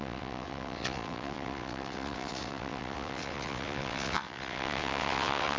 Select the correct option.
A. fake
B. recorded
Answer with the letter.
A